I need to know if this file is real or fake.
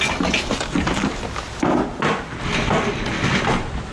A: real